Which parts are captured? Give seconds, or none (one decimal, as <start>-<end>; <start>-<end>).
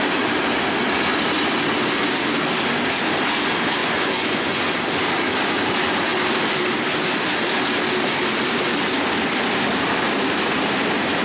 0.0-3.8; 4.6-11.2